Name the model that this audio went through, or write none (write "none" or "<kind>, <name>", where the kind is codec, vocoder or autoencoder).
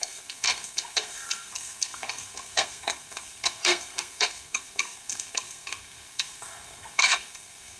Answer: codec, SNAC